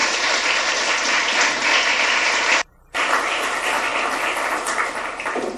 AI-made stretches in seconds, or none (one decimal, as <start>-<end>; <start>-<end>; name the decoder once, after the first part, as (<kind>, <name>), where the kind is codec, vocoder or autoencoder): 0.0-3.9 (vocoder, BigVGAN v2); 4.9-5.6

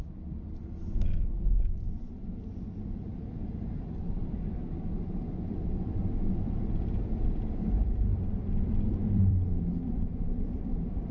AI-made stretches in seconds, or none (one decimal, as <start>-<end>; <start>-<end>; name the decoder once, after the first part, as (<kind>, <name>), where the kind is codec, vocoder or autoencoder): 0.0-11.1 (vocoder, BigVGAN v2)

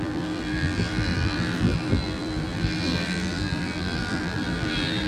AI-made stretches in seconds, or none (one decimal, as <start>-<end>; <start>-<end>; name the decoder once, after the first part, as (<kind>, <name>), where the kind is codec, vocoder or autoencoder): 0.0-5.1 (vocoder, BigVGAN v2)

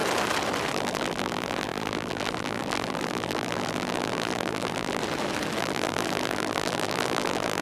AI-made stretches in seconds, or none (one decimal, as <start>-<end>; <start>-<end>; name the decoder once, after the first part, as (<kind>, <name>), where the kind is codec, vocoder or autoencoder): 0.7-5.0 (vocoder, BigVGAN v2); 5.6-7.6

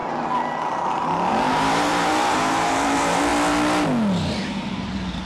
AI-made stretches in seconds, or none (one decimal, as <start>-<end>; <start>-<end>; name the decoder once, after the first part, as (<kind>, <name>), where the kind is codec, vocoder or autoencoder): 1.3-3.3 (vocoder, BigVGAN v2)

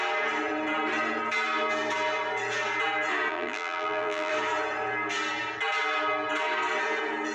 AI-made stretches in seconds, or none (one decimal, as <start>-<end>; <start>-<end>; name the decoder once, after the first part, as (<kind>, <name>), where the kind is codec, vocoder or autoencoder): 3.3-4.3 (vocoder, BigVGAN v2)

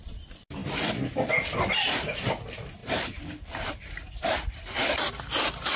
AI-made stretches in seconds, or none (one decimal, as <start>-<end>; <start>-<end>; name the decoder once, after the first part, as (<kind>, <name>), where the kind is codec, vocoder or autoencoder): 0.0-0.6 (vocoder, BigVGAN v2); 1.6-5.8

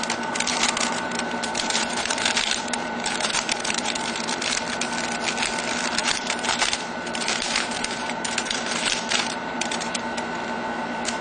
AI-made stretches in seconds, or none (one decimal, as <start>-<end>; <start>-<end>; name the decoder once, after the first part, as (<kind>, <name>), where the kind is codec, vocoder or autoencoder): 0.5-4.2 (vocoder, BigVGAN v2); 6.0-10.0